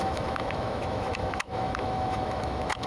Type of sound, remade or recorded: remade